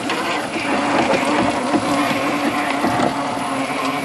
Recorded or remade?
recorded